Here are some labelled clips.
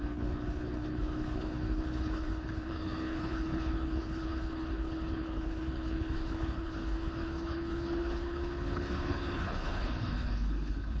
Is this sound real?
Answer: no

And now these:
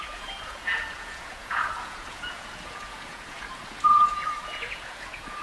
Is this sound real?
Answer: no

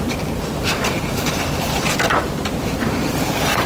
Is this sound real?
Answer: yes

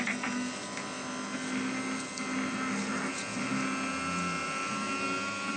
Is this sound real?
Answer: yes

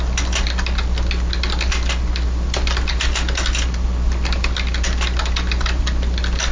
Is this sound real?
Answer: yes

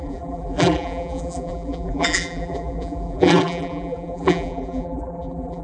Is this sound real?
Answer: no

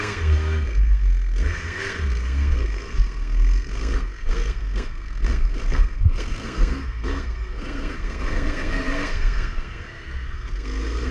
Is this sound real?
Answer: no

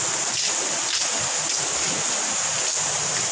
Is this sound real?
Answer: yes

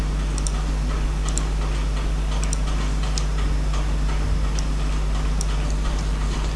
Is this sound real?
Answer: yes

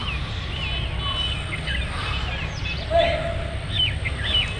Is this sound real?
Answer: yes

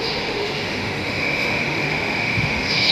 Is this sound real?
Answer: no